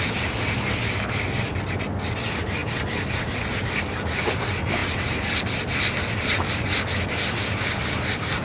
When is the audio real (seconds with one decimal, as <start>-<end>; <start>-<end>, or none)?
0.0-7.4; 8.0-8.4